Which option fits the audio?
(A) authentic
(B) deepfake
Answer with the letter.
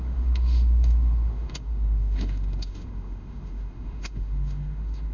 B